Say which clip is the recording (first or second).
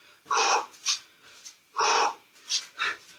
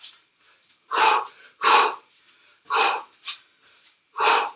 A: first